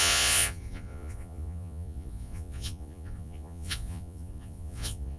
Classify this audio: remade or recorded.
remade